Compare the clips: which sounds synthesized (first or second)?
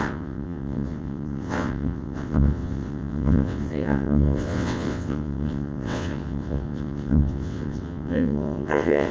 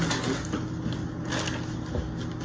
first